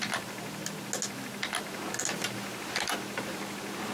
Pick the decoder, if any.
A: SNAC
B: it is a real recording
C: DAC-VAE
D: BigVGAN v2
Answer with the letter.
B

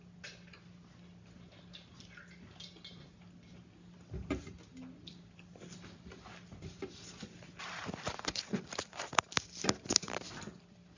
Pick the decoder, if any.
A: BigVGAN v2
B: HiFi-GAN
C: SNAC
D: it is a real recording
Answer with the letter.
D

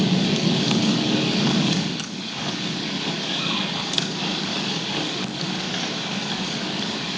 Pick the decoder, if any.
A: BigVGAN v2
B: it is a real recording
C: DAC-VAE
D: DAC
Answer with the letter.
D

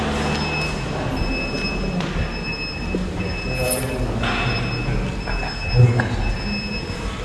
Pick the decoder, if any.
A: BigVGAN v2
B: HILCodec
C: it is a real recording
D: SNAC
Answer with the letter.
C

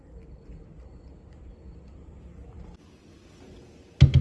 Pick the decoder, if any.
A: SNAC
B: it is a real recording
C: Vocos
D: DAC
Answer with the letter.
B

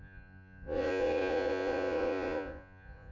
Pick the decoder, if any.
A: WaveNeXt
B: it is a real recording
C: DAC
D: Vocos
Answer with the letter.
D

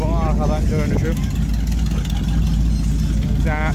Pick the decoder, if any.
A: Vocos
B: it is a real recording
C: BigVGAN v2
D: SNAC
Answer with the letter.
B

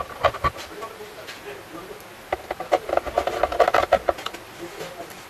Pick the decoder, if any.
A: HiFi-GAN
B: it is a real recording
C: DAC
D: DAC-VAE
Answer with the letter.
B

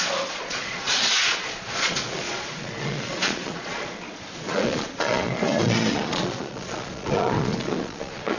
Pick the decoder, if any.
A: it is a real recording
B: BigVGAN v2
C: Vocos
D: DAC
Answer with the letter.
C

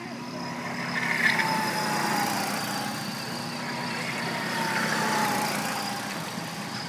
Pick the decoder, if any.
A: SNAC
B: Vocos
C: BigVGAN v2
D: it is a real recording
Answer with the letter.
D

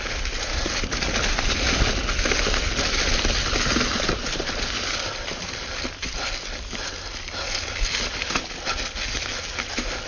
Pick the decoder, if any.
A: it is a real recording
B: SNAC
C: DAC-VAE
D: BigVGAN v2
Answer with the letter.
A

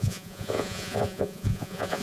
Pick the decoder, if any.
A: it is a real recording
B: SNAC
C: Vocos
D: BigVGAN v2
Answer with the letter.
C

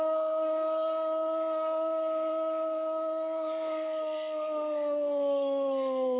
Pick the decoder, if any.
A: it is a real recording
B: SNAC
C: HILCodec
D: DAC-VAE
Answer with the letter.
B